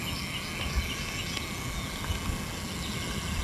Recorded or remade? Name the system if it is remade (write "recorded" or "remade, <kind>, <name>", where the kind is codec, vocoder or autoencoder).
recorded